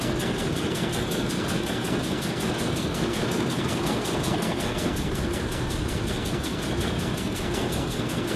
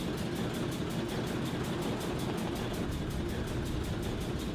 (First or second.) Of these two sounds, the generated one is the first